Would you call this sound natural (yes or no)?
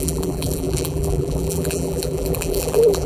no